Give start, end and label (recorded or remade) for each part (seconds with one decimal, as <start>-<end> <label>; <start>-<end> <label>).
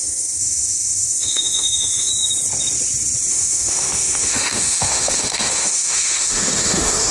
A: 0.0-2.1 remade; 2.1-3.3 recorded; 3.3-7.1 remade